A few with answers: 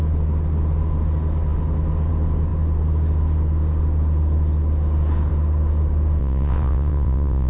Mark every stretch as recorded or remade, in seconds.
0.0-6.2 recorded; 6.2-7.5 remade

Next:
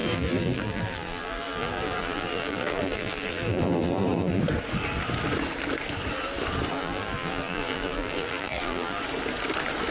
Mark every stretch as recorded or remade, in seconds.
0.0-4.4 remade; 4.4-6.7 recorded; 6.7-9.0 remade; 9.0-9.9 recorded

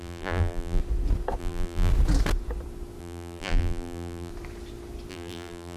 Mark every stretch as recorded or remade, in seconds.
0.0-0.8 remade; 0.8-1.4 recorded; 1.4-1.9 remade; 1.9-3.0 recorded; 3.0-4.3 remade; 4.3-5.1 recorded; 5.1-5.8 remade

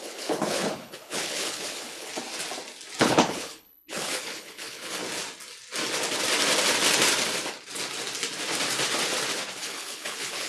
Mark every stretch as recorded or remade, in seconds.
0.0-2.1 remade; 2.1-3.0 recorded; 3.0-5.0 remade; 5.0-9.6 recorded; 9.6-10.5 remade

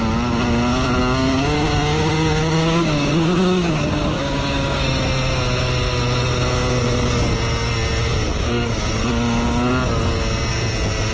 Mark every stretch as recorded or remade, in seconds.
0.0-1.0 recorded; 1.0-4.8 remade; 4.8-8.3 recorded; 8.3-8.8 remade; 8.8-11.1 recorded

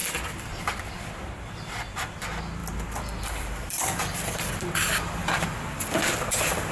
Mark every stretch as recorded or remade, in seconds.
0.0-0.5 remade; 0.5-2.6 recorded; 2.6-6.7 remade

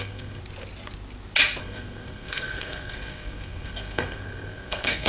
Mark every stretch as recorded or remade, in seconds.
0.0-0.4 remade; 0.4-1.6 recorded; 1.6-5.1 remade